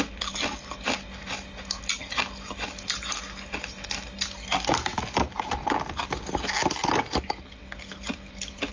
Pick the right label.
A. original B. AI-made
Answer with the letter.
A